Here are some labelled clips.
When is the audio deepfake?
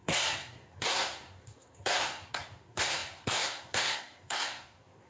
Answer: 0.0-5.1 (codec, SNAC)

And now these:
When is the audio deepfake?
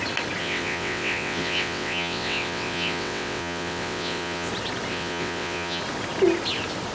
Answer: 0.4-4.5 (vocoder, WaveNeXt); 4.9-5.8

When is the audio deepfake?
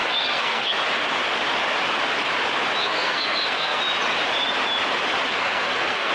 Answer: 0.0-0.8 (codec, SNAC); 2.8-3.8; 5.3-6.1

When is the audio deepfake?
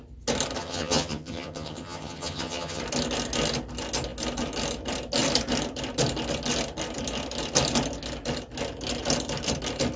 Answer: 0.6-2.8 (vocoder, HiFi-GAN)